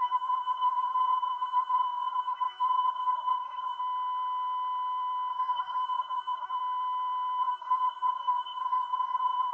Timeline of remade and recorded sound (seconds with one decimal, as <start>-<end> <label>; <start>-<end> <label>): 0.0-3.8 remade; 3.8-5.3 recorded; 5.3-6.6 remade; 6.6-7.4 recorded; 7.4-9.5 remade